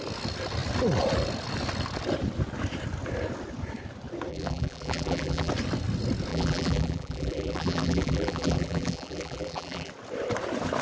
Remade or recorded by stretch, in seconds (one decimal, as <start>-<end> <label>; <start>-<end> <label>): 0.0-4.3 recorded; 4.3-5.5 remade; 5.5-6.3 recorded; 6.3-9.9 remade; 9.9-10.8 recorded

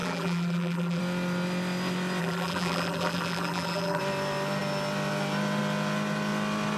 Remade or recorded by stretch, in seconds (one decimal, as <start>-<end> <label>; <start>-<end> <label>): 0.0-1.0 remade; 1.0-2.2 recorded; 2.2-4.0 remade; 4.0-6.8 recorded

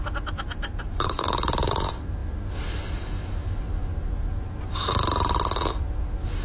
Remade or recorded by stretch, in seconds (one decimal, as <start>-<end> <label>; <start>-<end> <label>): 0.0-0.7 recorded; 0.7-1.7 remade; 1.7-6.4 recorded

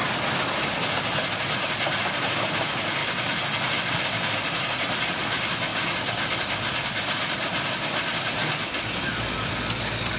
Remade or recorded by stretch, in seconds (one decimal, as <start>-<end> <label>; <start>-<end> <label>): 0.0-1.4 recorded; 1.4-3.0 remade; 3.0-3.9 recorded; 3.9-10.2 remade

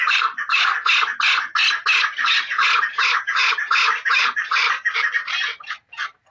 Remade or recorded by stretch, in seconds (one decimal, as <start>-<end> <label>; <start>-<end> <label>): 0.0-0.7 remade; 0.7-4.1 recorded; 4.1-5.2 remade; 5.2-5.7 recorded; 5.7-6.3 remade

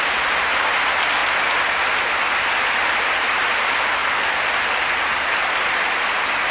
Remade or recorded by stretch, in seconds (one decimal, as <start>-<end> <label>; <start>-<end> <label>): 0.0-1.2 remade; 1.2-2.7 recorded; 2.7-4.0 remade; 4.0-6.0 recorded; 6.0-6.5 remade

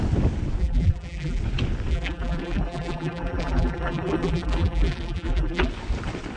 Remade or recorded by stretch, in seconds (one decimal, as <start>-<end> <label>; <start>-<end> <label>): 0.0-0.6 recorded; 0.6-1.4 remade; 1.4-1.9 recorded; 1.9-5.7 remade; 5.7-6.4 recorded